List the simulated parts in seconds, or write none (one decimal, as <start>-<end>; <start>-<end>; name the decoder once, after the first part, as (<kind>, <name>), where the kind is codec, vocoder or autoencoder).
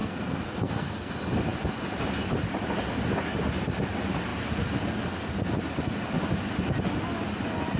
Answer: 0.0-1.1 (codec, SNAC)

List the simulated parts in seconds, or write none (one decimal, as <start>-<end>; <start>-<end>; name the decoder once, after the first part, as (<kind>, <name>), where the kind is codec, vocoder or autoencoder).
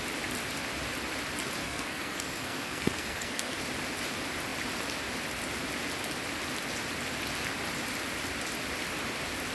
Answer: 1.6-3.6 (codec, SNAC)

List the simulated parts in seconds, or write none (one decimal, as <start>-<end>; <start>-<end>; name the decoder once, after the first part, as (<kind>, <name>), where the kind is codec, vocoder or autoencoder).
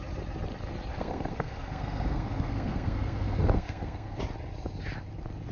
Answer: 0.9-4.2 (codec, SNAC)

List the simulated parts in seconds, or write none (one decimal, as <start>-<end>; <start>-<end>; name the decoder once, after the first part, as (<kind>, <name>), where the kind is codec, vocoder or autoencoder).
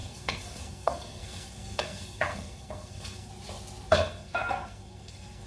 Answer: 0.0-3.3 (codec, SNAC); 3.9-5.5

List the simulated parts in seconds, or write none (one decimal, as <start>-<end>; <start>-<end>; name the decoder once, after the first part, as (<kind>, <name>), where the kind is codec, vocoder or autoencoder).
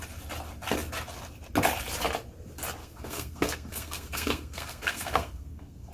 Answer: 2.8-5.9 (codec, SNAC)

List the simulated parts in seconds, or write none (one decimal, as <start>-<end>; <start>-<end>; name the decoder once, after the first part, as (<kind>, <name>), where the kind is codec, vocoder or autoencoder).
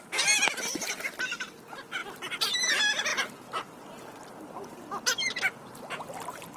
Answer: none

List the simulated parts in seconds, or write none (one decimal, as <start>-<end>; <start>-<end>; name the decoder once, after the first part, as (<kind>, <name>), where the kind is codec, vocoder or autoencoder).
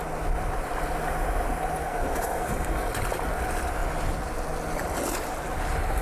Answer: 1.8-2.9 (codec, SNAC)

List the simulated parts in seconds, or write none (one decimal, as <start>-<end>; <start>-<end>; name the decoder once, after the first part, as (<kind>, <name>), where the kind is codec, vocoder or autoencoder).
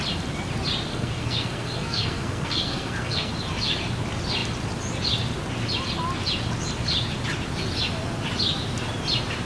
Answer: 0.9-3.3 (codec, SNAC)